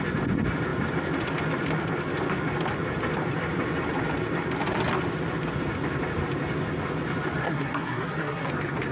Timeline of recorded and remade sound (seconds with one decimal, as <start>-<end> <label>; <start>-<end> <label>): 0.0-7.4 recorded; 7.4-8.5 remade; 8.5-8.9 recorded